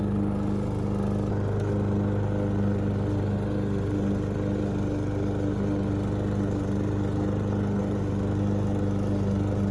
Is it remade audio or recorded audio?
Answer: recorded